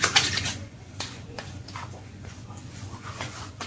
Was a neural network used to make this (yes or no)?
yes